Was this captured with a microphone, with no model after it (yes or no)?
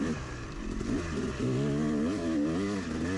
yes